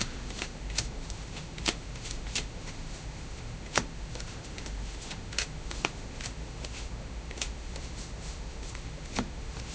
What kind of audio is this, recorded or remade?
remade